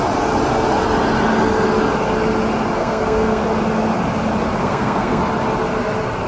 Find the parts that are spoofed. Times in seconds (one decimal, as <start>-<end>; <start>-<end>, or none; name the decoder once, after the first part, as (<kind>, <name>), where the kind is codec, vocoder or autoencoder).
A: 2.8-3.4 (codec, SNAC); 4.6-5.2

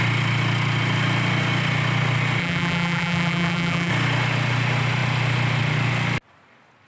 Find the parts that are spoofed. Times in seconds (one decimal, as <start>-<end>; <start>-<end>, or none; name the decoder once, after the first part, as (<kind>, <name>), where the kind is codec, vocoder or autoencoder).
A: 2.4-3.9 (vocoder, BigVGAN v2)

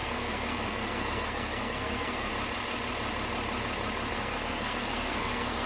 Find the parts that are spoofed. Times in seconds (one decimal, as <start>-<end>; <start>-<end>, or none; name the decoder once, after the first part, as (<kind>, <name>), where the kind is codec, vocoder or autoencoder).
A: 0.0-2.3 (codec, SNAC); 4.1-5.7

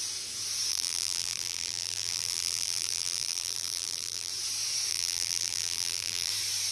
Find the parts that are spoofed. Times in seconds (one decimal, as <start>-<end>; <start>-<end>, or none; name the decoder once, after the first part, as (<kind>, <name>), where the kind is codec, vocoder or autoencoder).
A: 0.7-4.3 (vocoder, BigVGAN v2); 4.9-6.3

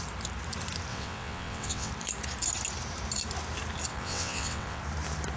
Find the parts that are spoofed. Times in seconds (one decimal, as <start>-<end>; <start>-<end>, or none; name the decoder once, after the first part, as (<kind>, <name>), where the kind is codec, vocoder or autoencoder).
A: 0.9-1.9 (vocoder, WaveNeXt); 3.9-4.8

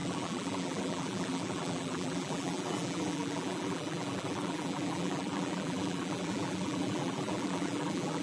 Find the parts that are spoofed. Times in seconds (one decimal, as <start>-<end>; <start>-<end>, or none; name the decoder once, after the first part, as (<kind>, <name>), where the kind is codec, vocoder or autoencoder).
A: 0.0-8.2 (vocoder, BigVGAN v2)

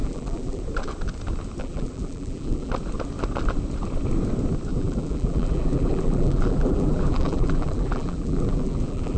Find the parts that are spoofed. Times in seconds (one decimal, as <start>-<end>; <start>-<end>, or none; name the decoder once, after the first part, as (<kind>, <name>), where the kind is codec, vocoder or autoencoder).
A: 0.0-0.6 (vocoder, BigVGAN v2); 1.6-2.7; 4.7-9.2

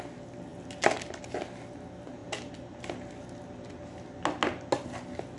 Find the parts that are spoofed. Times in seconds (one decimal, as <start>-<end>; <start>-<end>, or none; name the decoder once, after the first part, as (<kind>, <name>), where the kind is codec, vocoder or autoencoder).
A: none